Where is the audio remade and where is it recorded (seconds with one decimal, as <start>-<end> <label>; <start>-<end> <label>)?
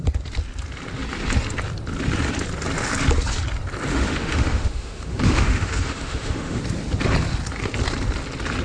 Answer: 0.0-3.9 recorded; 3.9-6.6 remade; 6.6-8.6 recorded